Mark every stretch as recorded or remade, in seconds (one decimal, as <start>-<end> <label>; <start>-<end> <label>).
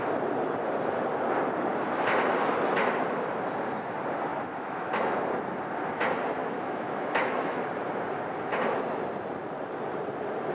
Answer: 0.0-4.3 recorded; 4.3-4.9 remade; 4.9-6.4 recorded; 6.4-7.6 remade; 7.6-10.5 recorded